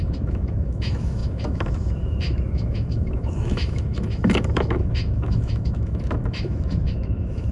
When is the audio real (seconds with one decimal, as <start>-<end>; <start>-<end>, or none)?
none